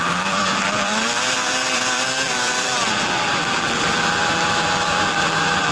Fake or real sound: fake